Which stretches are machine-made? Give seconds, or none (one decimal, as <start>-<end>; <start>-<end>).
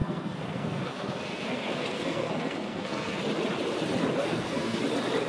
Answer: 0.0-3.2; 4.2-4.8